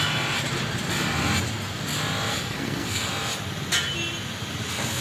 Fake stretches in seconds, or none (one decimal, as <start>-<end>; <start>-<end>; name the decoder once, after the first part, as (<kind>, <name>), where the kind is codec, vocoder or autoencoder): 2.3-3.1 (codec, SNAC)